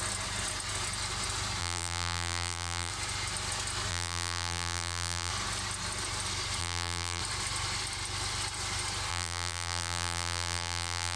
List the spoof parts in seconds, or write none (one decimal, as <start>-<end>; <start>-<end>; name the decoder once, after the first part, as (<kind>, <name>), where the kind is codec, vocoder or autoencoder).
1.6-2.9 (vocoder, BigVGAN v2); 3.9-5.3; 6.6-7.2; 9.1-11.2